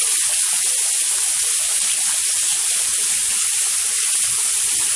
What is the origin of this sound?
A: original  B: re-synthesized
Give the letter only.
B